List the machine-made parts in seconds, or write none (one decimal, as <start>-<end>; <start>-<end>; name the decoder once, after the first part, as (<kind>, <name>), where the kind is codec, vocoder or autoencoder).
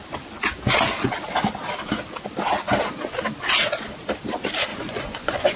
4.7-5.6 (vocoder, Vocos)